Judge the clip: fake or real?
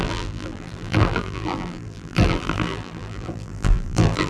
fake